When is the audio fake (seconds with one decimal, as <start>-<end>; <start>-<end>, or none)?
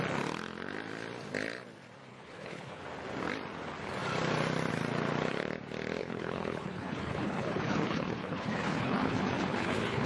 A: 2.1-2.8; 6.0-10.1